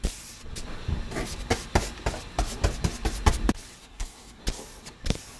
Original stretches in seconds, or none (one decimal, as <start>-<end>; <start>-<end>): 0.0-3.8; 4.4-5.4

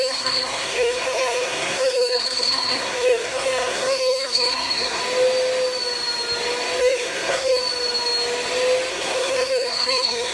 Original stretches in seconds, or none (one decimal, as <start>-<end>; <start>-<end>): 5.0-6.8; 7.6-8.9

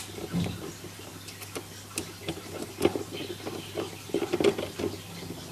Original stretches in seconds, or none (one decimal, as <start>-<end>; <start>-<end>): 0.0-5.5

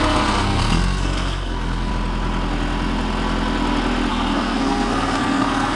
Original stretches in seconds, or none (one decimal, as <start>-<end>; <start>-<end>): 1.9-4.1

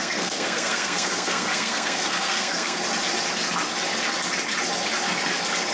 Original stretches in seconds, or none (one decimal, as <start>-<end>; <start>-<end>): 2.8-5.7

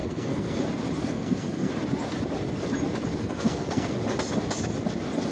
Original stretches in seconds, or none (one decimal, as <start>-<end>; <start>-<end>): 0.6-1.0; 1.7-3.2; 4.0-5.3

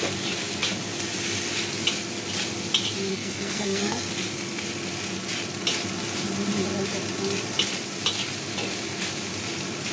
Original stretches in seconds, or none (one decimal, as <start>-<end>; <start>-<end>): 0.0-3.1; 4.1-9.9